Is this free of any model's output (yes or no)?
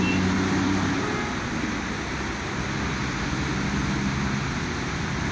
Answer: yes